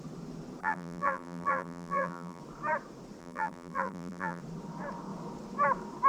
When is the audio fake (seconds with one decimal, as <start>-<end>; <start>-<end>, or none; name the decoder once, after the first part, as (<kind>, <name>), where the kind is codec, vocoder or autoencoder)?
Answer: 0.6-2.4 (vocoder, BigVGAN v2); 3.2-4.4